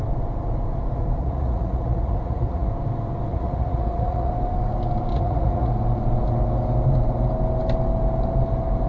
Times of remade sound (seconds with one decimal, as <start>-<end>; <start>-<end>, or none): 1.2-2.7; 3.3-4.3; 5.1-5.7